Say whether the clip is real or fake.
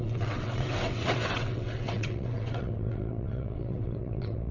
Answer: fake